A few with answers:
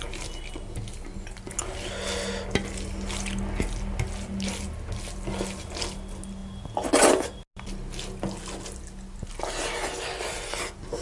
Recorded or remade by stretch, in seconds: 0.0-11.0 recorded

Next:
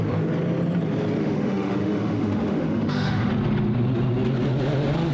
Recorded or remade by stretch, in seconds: 0.0-1.2 recorded; 1.2-3.3 remade; 3.3-5.1 recorded